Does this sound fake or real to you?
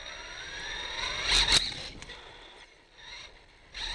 real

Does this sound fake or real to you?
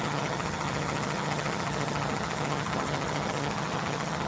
fake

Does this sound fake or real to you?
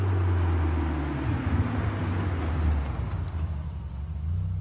real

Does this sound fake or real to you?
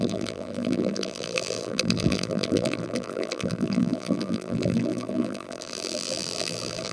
fake